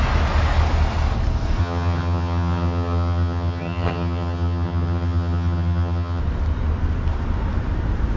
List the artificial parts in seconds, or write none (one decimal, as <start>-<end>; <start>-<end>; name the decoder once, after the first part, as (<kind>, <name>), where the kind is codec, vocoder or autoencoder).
1.6-6.2 (vocoder, HiFi-GAN)